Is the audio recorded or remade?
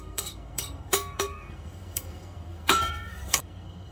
remade